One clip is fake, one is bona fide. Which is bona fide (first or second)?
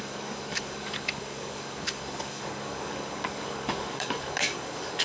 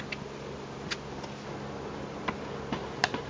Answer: second